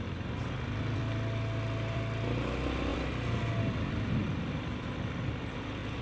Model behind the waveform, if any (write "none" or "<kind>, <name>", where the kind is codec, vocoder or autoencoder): none